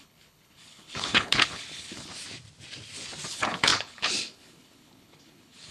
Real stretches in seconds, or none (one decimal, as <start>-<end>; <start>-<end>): 2.1-3.3

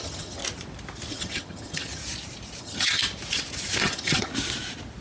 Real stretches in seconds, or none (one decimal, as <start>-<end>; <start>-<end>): 0.4-1.1; 2.0-2.6; 3.0-3.8; 4.3-5.0

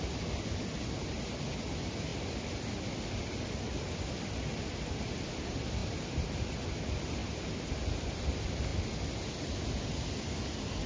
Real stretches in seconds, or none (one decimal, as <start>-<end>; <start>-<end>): 0.0-5.8; 6.7-7.2; 7.7-10.9

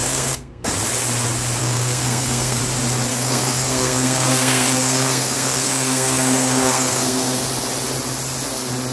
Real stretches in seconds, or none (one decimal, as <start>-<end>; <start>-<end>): 0.7-1.6; 2.6-3.1; 7.4-8.9